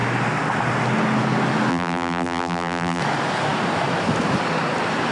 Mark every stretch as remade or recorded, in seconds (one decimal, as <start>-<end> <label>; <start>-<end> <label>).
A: 0.0-1.7 recorded; 1.7-3.0 remade; 3.0-5.1 recorded